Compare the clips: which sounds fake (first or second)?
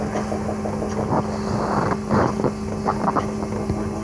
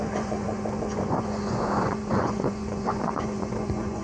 second